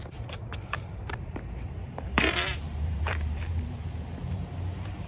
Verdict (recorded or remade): remade